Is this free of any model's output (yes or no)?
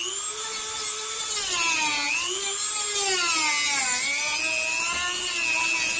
yes